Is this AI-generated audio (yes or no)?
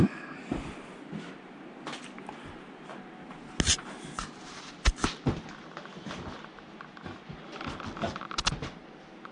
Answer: no